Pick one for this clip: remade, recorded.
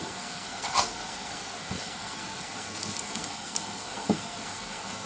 remade